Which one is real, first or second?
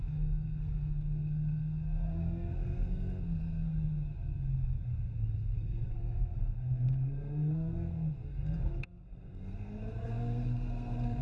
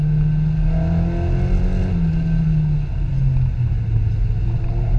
second